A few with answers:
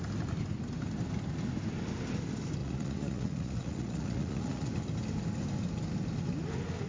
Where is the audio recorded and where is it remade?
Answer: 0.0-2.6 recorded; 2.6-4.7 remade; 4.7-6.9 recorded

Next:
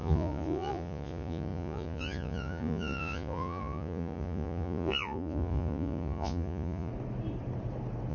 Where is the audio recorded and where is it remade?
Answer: 0.0-6.9 remade; 6.9-8.1 recorded

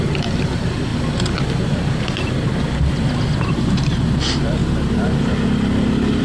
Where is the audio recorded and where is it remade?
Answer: 0.0-0.9 remade; 0.9-3.4 recorded; 3.4-4.6 remade; 4.6-6.2 recorded

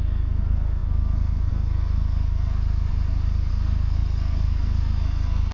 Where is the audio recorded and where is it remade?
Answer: 0.0-2.9 remade; 2.9-3.5 recorded; 3.5-5.5 remade

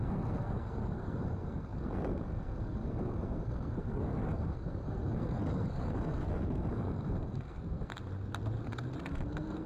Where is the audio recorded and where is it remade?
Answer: 0.0-7.9 remade; 7.9-9.1 recorded; 9.1-9.7 remade